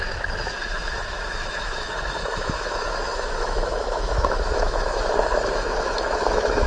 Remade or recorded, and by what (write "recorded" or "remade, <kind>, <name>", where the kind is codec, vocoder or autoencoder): remade, autoencoder, DAC-VAE